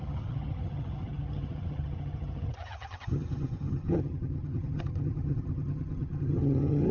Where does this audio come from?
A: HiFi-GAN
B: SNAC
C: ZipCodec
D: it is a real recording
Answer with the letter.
A